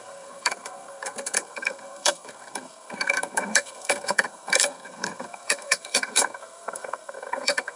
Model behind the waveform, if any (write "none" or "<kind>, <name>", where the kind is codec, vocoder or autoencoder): codec, SNAC